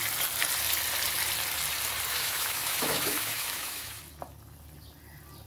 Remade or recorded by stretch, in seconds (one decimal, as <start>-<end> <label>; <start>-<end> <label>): 0.0-2.1 recorded; 2.1-4.0 remade; 4.0-5.5 recorded